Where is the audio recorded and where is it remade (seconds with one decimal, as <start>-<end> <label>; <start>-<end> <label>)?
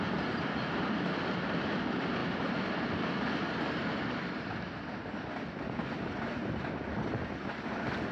0.0-2.2 recorded; 2.2-3.5 remade; 3.5-8.1 recorded